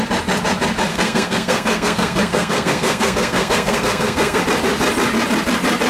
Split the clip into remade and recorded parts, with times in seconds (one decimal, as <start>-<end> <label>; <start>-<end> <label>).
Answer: 0.0-0.9 recorded; 0.9-4.4 remade; 4.4-5.9 recorded